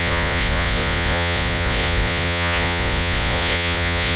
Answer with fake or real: fake